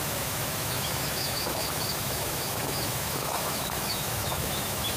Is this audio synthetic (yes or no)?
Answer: yes